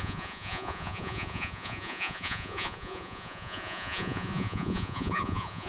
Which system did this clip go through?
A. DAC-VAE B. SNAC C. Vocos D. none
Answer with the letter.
C